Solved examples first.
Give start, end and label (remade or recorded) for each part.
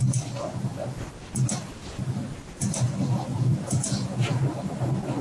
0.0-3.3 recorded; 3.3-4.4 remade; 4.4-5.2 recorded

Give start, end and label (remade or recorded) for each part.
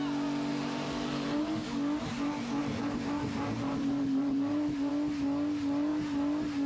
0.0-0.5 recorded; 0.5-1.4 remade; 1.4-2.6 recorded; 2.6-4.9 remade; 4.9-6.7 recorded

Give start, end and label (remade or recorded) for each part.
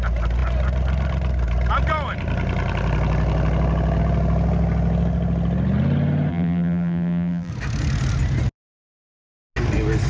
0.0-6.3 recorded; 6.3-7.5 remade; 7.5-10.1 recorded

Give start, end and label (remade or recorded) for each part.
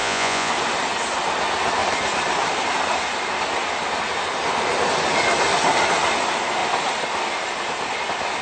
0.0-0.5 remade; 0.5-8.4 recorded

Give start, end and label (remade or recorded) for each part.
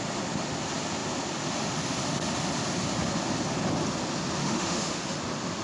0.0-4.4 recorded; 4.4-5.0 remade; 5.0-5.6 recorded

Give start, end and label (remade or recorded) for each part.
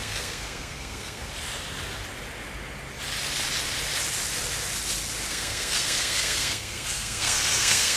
0.0-1.3 remade; 1.3-5.3 recorded; 5.3-8.0 remade